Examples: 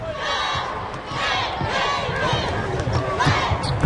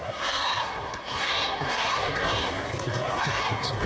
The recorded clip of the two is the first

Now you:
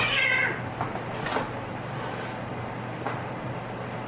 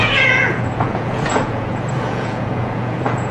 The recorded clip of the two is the first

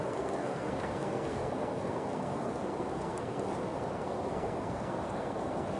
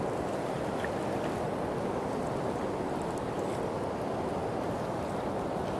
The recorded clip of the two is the second